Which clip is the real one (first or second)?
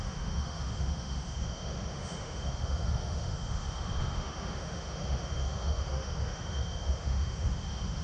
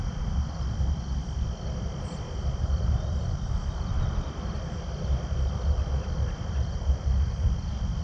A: second